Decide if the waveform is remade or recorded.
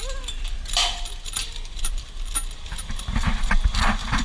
remade